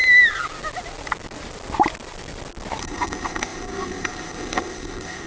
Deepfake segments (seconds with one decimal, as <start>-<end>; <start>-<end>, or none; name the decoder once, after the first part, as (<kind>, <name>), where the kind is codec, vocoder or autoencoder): 2.8-5.3 (codec, SNAC)